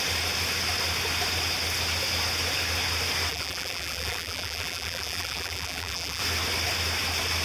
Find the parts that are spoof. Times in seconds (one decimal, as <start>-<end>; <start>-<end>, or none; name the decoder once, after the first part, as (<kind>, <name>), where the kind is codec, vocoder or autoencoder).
3.3-6.2 (vocoder, BigVGAN v2)